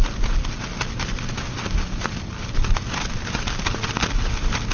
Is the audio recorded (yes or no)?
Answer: yes